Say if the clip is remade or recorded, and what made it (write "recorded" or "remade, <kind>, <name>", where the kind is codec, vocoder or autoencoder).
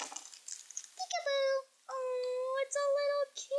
recorded